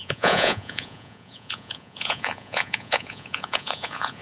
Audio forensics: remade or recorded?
remade